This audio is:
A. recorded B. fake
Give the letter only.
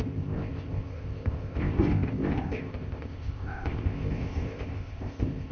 B